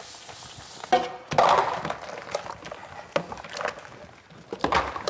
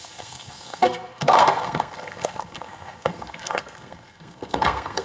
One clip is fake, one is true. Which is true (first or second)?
first